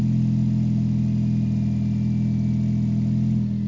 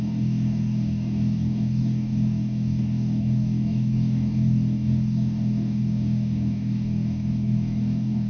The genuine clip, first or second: first